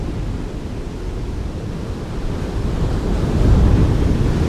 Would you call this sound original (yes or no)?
yes